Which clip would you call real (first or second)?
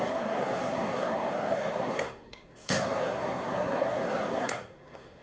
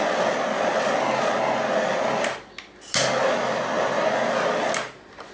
second